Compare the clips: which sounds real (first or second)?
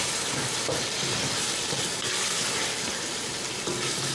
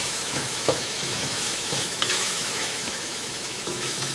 first